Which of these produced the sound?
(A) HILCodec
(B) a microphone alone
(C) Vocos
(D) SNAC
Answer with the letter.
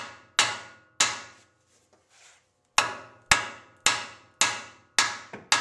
B